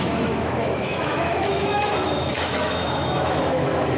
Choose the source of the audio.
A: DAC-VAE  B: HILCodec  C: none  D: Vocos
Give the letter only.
A